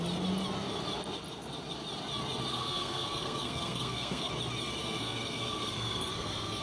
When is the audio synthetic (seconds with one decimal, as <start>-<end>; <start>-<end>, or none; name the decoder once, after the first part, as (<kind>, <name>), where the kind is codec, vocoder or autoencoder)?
2.5-4.3 (codec, SNAC); 4.8-6.6